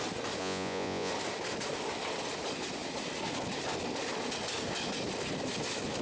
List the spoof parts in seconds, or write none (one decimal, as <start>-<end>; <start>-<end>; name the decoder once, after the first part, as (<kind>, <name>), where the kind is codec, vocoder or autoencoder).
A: 0.4-1.1 (vocoder, Vocos)